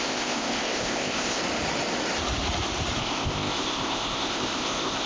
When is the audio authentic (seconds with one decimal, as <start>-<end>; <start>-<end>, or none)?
1.4-3.0